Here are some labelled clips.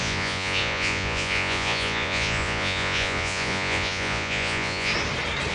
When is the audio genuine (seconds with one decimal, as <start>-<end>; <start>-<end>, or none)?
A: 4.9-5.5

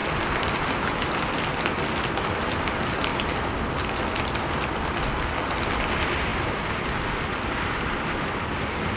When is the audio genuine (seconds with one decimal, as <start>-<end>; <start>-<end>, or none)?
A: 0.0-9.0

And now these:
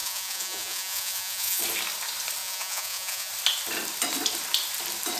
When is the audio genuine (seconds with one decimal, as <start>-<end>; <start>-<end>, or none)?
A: 1.6-2.4; 3.3-5.2

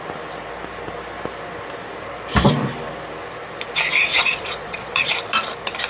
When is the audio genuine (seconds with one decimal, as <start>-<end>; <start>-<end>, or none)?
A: 0.0-4.1; 5.1-5.9

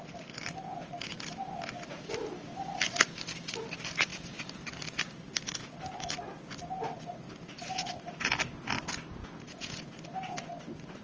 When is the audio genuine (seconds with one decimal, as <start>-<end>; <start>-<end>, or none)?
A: 0.0-9.2; 9.8-11.0

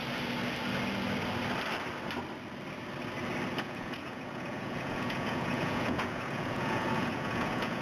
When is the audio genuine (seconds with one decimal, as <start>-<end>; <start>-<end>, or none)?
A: 0.0-3.6

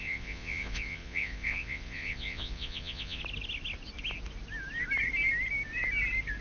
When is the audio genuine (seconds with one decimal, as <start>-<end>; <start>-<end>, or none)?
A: 3.2-6.4

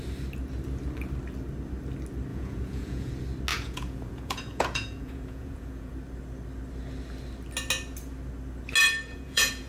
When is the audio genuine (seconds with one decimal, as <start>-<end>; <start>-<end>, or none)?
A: 0.0-2.3; 3.1-3.5; 5.9-8.8